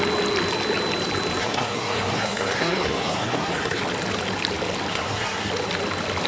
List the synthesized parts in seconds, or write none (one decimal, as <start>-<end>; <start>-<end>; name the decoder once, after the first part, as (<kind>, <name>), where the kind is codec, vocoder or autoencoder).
1.4-3.8 (codec, SNAC); 4.9-5.5